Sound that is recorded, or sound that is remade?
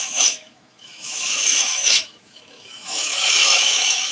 remade